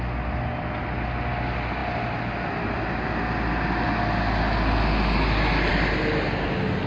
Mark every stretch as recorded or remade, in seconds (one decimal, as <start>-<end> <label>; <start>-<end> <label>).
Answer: 0.0-6.9 recorded

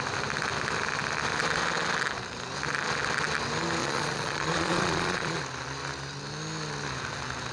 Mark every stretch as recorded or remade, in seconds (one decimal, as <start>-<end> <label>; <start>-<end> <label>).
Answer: 0.0-3.8 recorded; 3.8-5.4 remade; 5.4-7.5 recorded

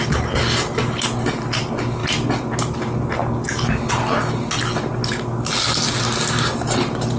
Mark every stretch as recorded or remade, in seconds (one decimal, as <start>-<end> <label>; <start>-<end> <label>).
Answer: 0.0-7.2 recorded